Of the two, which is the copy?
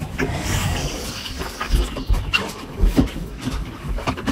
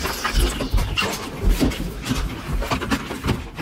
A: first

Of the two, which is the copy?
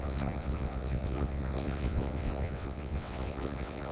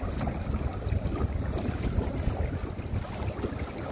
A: first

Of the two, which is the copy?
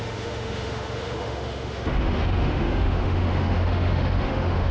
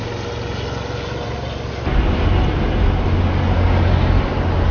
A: first